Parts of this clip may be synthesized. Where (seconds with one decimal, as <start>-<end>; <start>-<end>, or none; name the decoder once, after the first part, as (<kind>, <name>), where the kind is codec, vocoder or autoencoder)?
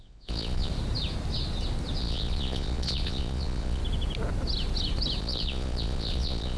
0.0-0.7 (vocoder, Vocos); 2.0-3.8; 5.2-6.6